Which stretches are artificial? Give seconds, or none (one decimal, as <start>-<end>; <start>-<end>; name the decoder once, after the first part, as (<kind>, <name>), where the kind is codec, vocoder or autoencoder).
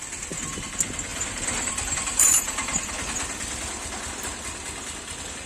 1.1-2.9 (vocoder, BigVGAN v2)